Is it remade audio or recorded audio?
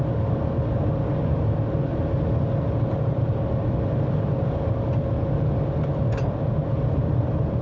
recorded